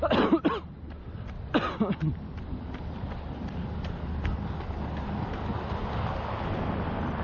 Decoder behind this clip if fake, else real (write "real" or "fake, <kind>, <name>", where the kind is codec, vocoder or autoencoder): real